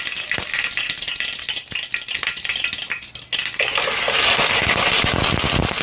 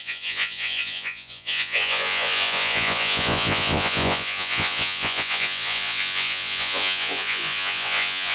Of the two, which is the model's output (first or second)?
second